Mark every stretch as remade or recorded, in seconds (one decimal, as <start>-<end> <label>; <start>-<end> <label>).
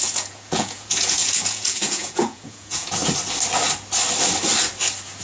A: 0.0-3.0 remade; 3.0-5.2 recorded